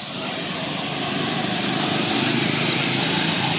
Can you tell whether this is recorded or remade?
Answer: recorded